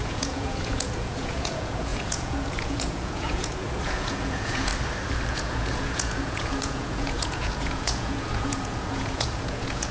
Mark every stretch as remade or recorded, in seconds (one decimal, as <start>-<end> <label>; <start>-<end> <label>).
0.0-4.7 remade; 4.7-5.3 recorded; 5.3-9.9 remade